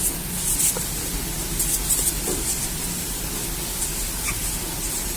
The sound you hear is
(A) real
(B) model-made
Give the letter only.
A